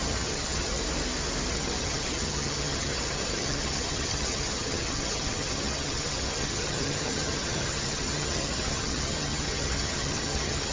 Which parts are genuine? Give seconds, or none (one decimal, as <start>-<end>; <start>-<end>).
0.8-1.5